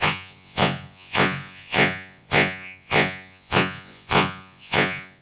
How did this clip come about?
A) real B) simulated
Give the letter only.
B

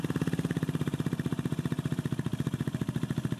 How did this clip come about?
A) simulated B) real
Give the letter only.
A